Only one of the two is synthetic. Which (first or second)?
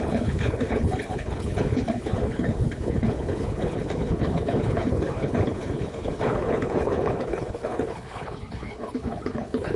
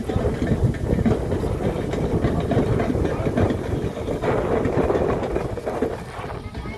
first